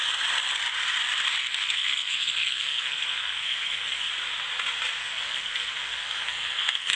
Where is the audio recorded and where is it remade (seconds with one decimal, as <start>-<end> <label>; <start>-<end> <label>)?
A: 0.0-1.4 recorded; 1.4-4.1 remade; 4.1-5.0 recorded; 5.0-7.0 remade